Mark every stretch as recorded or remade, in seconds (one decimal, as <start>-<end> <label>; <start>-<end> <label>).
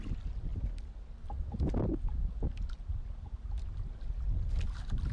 0.0-5.1 recorded